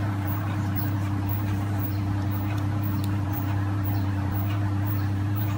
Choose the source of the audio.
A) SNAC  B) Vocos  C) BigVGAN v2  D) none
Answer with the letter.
C